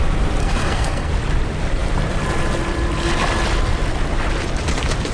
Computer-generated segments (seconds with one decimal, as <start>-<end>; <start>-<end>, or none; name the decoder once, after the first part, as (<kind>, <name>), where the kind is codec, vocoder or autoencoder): 0.4-1.1 (codec, SNAC)

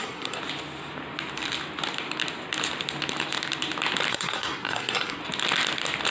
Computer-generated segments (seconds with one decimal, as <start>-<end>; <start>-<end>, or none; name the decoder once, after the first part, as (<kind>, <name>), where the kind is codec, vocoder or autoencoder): 0.0-0.4 (codec, SNAC); 4.1-5.2